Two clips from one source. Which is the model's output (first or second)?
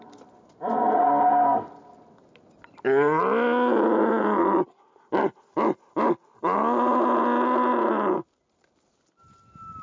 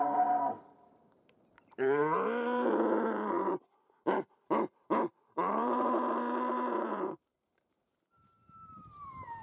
second